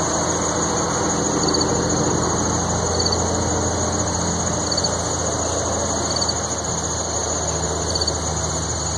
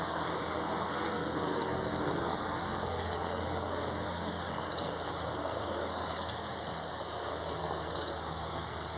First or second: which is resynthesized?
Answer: second